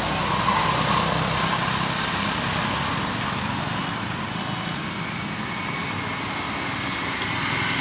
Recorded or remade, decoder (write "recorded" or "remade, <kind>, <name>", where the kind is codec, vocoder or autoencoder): recorded